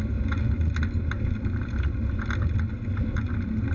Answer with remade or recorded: recorded